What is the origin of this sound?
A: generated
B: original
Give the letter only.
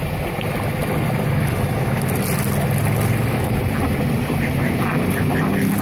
B